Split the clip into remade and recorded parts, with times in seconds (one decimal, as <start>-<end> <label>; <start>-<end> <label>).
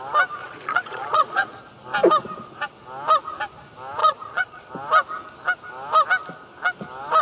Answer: 0.0-0.4 recorded; 0.4-1.6 remade; 1.6-4.0 recorded; 4.0-4.7 remade; 4.7-7.2 recorded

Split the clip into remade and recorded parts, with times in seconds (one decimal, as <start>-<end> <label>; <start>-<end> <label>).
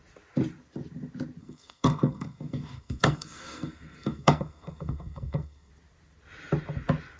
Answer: 0.0-1.4 recorded; 1.4-5.7 remade; 5.7-7.2 recorded